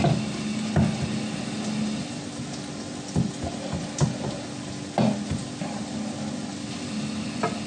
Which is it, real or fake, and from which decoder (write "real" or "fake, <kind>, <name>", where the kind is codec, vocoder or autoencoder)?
real